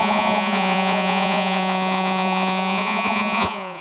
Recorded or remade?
remade